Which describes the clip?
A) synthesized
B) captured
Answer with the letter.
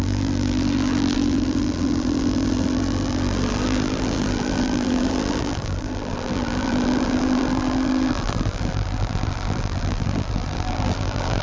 A